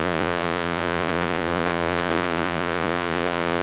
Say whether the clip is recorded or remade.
remade